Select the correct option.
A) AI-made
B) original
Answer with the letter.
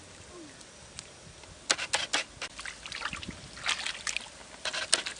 B